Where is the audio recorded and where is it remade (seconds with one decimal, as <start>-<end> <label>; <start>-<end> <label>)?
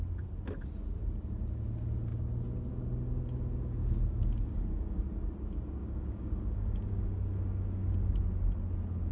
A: 0.0-3.8 recorded; 3.8-5.0 remade; 5.0-5.8 recorded; 5.8-8.2 remade; 8.2-9.1 recorded